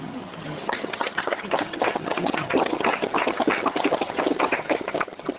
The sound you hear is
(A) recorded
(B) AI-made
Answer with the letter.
B